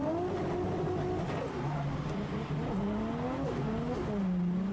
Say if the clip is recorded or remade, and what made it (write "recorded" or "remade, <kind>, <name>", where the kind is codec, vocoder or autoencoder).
recorded